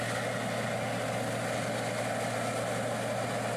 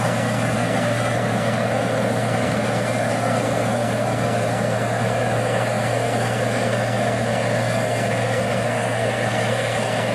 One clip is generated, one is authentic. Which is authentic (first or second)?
first